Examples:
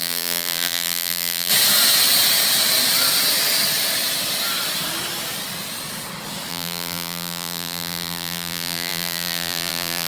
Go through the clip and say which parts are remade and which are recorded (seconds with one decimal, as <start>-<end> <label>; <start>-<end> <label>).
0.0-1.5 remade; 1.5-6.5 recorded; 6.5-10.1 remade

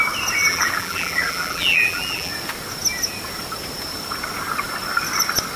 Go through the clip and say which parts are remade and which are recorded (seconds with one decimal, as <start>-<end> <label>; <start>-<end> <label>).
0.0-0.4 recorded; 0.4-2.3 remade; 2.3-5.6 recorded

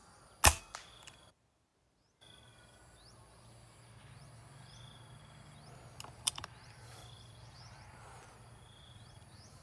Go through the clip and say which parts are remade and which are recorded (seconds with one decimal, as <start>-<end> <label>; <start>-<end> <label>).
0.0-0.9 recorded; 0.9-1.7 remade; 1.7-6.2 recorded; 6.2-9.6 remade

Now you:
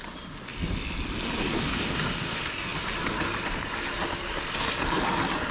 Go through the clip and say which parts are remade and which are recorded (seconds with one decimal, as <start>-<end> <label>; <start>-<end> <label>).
0.0-5.5 recorded

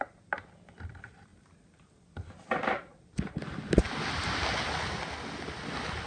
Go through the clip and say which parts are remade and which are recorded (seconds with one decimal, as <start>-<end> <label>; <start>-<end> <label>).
0.0-1.3 recorded; 1.3-2.8 remade; 2.8-6.1 recorded